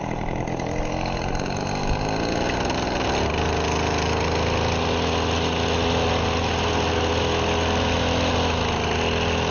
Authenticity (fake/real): real